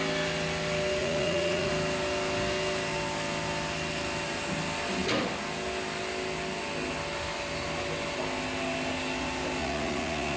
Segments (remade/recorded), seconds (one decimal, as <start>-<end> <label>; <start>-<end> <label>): 0.0-1.0 recorded; 1.0-1.7 remade; 1.7-9.6 recorded; 9.6-10.4 remade